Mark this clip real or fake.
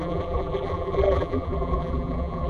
fake